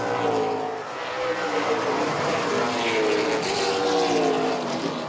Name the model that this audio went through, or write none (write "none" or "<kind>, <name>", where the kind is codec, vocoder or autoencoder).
none